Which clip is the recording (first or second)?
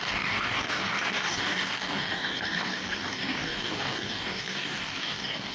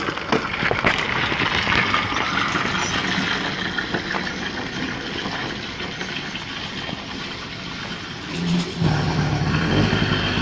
second